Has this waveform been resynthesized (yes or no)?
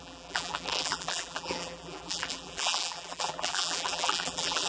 yes